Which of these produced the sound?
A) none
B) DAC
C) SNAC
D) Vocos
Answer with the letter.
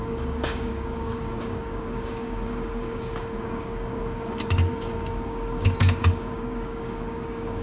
B